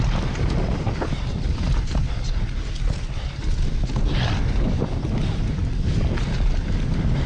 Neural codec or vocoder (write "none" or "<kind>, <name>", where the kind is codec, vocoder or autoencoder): none